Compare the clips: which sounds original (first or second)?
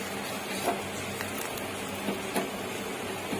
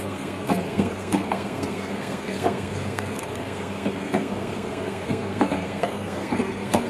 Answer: first